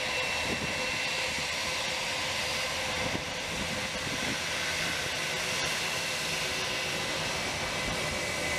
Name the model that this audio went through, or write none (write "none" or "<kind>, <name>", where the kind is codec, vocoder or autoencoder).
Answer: none